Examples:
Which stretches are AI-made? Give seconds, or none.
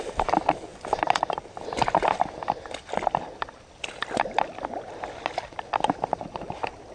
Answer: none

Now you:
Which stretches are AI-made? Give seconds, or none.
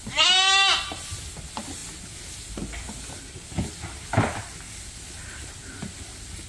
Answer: none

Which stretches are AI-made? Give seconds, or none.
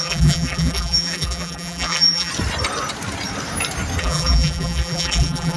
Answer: 0.0-2.3 (vocoder, BigVGAN v2); 4.0-5.6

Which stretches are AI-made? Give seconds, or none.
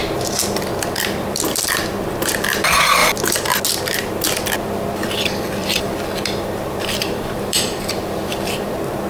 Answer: 0.0-3.0 (vocoder, BigVGAN v2); 3.8-9.1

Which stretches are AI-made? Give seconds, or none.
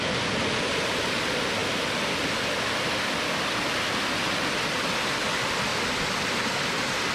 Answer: none